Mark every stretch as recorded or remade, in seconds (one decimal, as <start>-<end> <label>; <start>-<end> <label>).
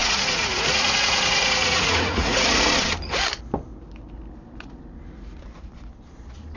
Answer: 0.0-2.7 remade; 2.7-6.6 recorded